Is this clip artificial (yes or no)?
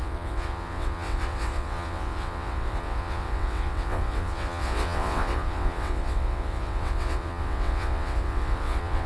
yes